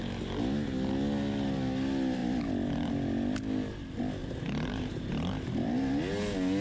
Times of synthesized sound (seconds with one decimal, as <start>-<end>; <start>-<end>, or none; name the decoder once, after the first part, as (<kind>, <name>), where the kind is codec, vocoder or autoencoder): 4.2-5.9 (vocoder, BigVGAN v2)